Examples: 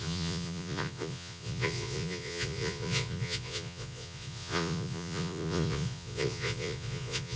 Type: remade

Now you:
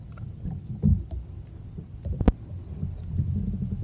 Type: recorded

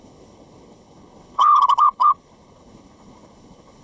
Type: remade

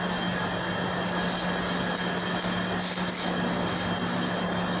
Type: recorded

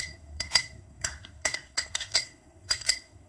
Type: remade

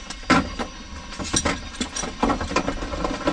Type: recorded